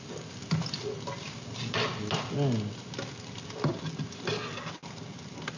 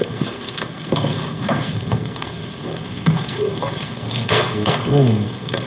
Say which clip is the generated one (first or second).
second